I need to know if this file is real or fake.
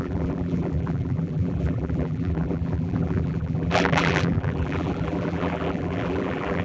fake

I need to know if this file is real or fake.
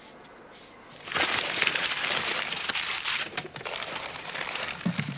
real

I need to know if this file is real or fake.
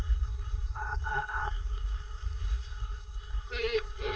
fake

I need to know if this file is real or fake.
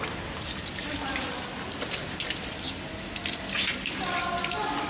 real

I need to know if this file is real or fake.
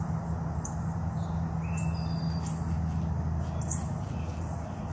real